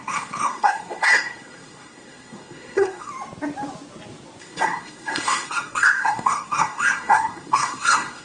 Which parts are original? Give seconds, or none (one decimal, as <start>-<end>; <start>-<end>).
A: 3.1-4.4